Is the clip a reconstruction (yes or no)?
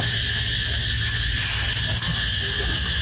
no